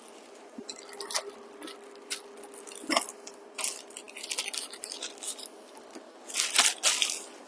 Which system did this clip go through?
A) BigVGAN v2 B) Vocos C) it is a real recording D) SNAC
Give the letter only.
C